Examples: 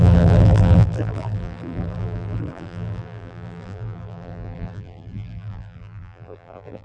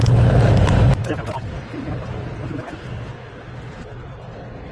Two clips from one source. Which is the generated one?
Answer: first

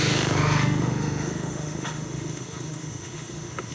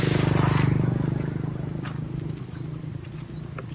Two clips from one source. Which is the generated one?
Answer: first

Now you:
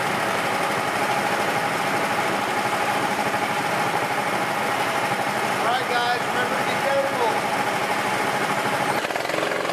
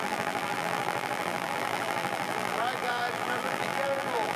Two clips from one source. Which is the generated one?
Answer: second